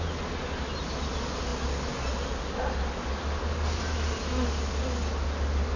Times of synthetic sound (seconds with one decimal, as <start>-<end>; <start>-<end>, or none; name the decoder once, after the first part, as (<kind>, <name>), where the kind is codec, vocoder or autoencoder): none

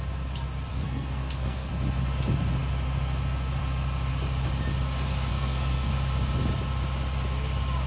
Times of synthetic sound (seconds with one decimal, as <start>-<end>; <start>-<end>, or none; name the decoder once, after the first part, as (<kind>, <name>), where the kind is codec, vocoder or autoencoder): 0.7-1.7 (codec, SNAC); 5.3-5.9